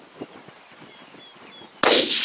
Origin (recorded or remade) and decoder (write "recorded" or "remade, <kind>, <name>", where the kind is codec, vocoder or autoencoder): recorded